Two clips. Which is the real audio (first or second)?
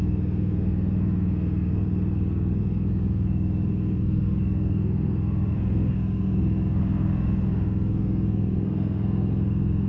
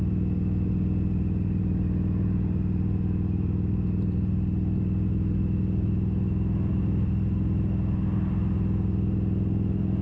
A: second